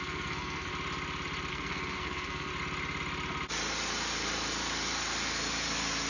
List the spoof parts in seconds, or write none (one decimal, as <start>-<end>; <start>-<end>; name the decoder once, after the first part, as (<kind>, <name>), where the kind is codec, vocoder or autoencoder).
0.0-0.7 (codec, SNAC); 1.5-2.5